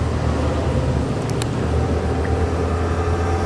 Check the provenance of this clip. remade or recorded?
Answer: recorded